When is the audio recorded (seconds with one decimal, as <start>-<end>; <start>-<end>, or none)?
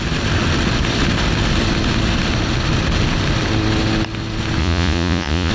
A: 0.0-4.6